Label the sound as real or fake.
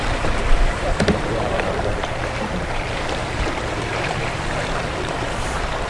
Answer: fake